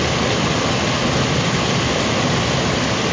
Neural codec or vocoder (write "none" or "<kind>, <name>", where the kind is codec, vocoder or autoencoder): none